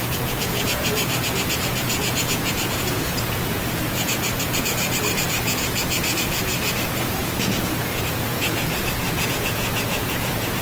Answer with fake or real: fake